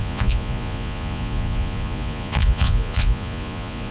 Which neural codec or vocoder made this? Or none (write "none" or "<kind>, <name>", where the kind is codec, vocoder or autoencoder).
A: vocoder, Vocos